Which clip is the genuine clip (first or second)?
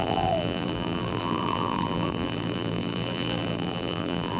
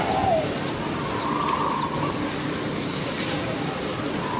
second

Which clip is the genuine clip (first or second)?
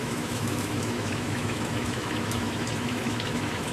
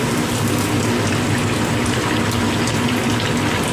second